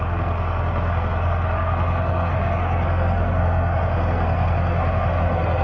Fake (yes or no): yes